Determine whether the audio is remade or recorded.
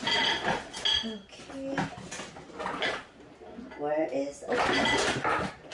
recorded